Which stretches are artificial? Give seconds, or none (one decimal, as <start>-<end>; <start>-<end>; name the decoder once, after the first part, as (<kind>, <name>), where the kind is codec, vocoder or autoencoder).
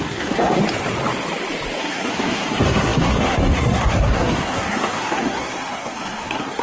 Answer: 0.0-0.6 (codec, SNAC); 1.8-6.6